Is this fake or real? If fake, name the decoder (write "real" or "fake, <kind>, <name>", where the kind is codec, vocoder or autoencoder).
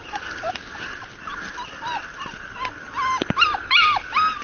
real